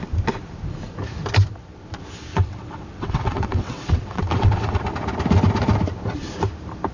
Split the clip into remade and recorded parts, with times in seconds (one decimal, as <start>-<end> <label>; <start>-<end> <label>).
0.0-2.3 recorded; 2.3-4.9 remade; 4.9-6.9 recorded